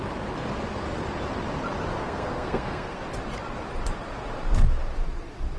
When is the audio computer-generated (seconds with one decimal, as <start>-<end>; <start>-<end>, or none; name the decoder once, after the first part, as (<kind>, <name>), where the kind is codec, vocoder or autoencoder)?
1.9-3.0 (codec, SNAC)